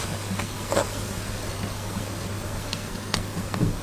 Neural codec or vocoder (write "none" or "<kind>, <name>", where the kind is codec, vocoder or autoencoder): codec, SNAC